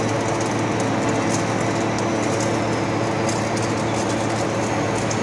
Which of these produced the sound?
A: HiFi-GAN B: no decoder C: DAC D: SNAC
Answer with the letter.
B